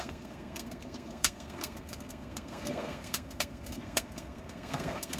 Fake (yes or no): yes